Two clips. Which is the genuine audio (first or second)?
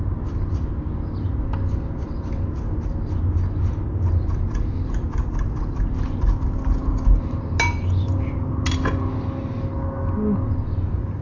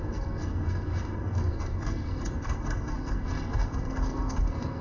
first